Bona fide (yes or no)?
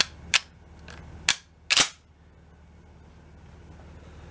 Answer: yes